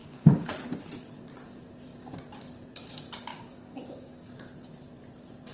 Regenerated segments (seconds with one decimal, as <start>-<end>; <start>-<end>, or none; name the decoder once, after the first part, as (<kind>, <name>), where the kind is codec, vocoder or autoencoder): 0.0-0.5 (codec, DAC); 3.3-4.3